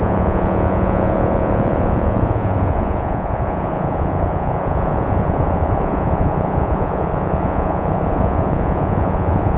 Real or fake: fake